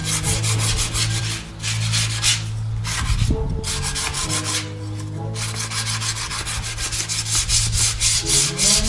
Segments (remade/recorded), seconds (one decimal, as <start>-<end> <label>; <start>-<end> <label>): 0.0-8.9 recorded